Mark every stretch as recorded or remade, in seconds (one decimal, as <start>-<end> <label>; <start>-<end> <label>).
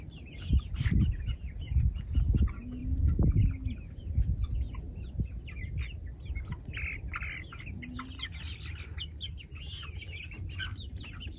0.0-10.7 recorded; 10.7-11.4 remade